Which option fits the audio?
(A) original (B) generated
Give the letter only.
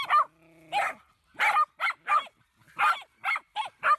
A